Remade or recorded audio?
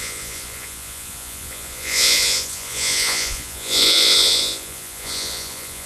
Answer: remade